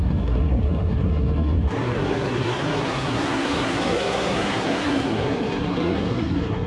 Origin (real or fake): fake